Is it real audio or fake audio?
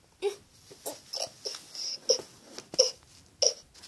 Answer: real